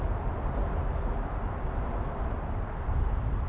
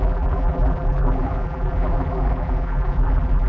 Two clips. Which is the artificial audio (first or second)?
second